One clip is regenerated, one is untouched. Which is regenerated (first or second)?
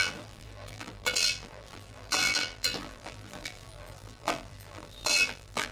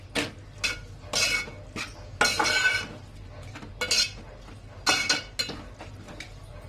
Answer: first